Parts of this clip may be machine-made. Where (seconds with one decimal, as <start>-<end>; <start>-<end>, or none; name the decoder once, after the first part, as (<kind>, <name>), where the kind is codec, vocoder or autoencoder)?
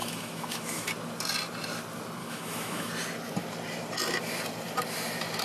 0.0-0.9 (autoencoder, DAC-VAE); 2.2-2.9